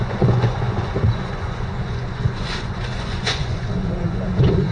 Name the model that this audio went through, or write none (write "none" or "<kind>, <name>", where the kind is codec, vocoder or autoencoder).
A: vocoder, Vocos